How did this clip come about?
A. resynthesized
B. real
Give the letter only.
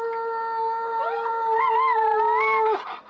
B